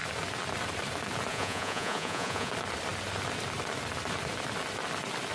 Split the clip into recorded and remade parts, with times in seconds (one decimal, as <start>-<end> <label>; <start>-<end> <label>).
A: 0.0-1.3 recorded; 1.3-2.5 remade; 2.5-5.3 recorded

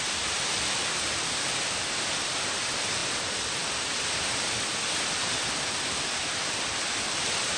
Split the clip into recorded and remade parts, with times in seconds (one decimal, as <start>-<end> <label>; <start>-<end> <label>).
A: 0.0-7.6 remade